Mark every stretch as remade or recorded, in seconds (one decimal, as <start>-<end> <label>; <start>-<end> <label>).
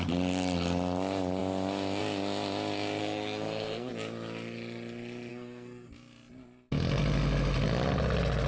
0.0-3.0 recorded; 3.0-3.9 remade; 3.9-5.3 recorded; 5.3-5.9 remade; 5.9-8.5 recorded